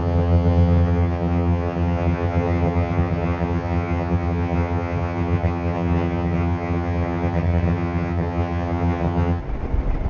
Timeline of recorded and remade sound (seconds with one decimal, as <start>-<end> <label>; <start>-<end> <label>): 0.0-9.4 remade; 9.4-10.1 recorded